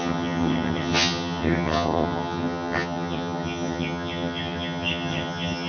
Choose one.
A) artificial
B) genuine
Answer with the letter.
A